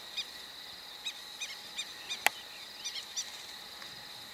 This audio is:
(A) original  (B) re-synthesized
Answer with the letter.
A